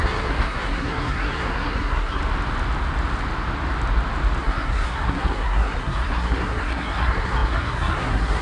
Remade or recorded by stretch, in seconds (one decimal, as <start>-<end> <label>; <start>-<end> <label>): 0.0-2.2 remade; 2.2-4.4 recorded; 4.4-8.4 remade